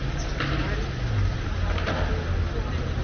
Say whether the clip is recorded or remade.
recorded